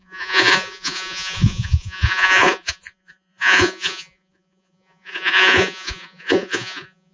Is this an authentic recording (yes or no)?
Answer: no